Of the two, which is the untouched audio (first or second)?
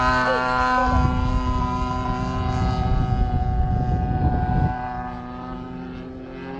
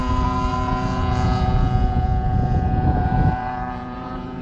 first